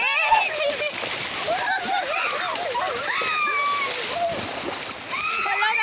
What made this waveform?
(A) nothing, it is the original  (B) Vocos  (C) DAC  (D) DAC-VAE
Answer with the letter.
A